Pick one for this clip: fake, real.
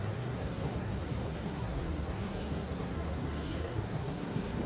fake